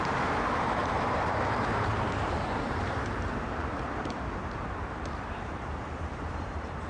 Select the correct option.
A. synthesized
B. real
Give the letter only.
A